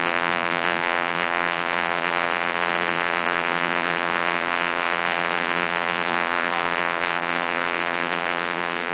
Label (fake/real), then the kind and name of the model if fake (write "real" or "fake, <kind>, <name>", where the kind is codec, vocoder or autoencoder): fake, vocoder, BigVGAN v2